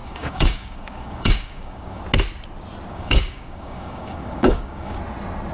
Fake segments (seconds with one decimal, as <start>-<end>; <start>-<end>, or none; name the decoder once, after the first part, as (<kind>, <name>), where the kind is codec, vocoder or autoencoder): 0.0-2.0 (codec, DAC); 2.9-5.0